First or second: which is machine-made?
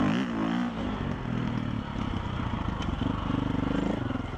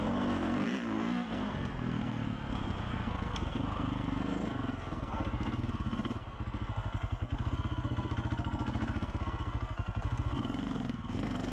second